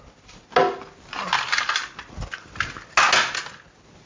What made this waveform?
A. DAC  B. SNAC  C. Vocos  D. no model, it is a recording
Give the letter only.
D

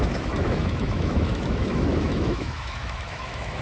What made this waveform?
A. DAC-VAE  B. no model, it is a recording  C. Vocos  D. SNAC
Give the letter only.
A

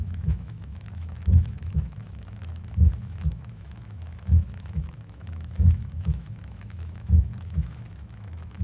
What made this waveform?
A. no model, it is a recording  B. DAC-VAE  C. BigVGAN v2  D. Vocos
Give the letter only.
B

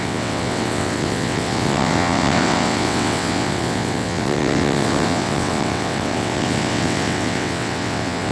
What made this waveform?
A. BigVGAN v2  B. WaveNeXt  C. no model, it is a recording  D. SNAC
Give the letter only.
B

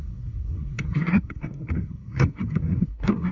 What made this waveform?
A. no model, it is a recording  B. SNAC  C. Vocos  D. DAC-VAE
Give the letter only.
B